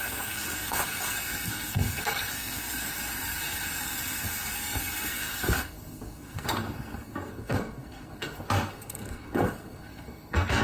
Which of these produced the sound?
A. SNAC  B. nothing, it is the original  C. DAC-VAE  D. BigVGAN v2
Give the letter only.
A